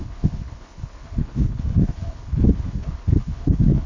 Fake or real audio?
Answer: fake